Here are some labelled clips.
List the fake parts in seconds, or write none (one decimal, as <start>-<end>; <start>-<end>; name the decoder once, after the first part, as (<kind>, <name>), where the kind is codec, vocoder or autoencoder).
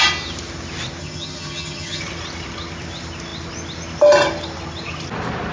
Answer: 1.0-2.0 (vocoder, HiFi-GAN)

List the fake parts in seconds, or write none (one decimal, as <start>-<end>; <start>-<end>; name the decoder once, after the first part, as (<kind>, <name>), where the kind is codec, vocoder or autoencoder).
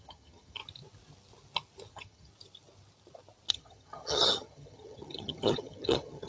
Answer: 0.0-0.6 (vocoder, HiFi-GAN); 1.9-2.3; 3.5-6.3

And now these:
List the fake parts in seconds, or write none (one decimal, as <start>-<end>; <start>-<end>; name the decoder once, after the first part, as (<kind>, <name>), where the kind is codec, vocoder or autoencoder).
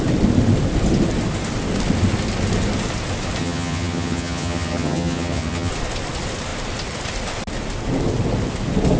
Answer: 3.4-5.7 (vocoder, HiFi-GAN)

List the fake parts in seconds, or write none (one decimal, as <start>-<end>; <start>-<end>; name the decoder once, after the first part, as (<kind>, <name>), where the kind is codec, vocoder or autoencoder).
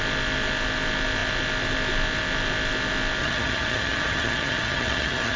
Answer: 3.2-5.4 (vocoder, HiFi-GAN)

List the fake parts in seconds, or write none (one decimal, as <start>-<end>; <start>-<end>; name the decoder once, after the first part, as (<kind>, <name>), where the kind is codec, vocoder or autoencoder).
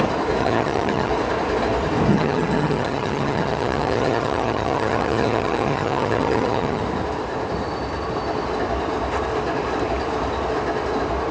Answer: 0.4-1.1 (vocoder, HiFi-GAN); 2.1-6.8